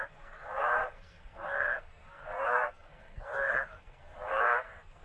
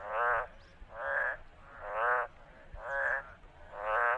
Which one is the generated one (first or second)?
first